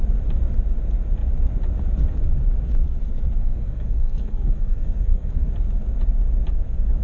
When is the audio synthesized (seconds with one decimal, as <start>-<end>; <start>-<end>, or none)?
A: 3.4-5.5